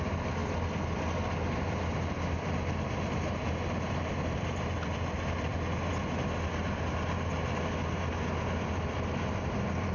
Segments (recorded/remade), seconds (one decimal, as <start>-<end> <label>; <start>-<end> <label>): 0.0-0.4 remade; 0.4-3.3 recorded; 3.3-5.5 remade; 5.5-8.9 recorded; 8.9-9.9 remade